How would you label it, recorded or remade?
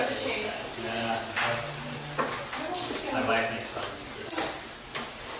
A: recorded